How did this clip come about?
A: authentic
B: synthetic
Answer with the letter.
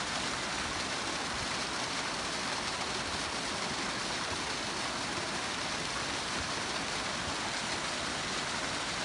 A